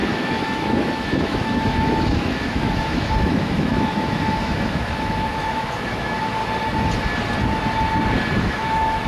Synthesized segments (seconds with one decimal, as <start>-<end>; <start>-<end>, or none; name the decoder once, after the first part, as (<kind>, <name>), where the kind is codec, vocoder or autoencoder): 0.0-6.4 (autoencoder, DAC-VAE); 8.4-9.1